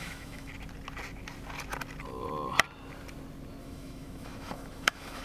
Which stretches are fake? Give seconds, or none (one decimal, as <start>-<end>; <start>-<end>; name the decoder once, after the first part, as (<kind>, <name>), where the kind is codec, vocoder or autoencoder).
0.0-0.5 (autoencoder, DAC-VAE); 3.6-5.2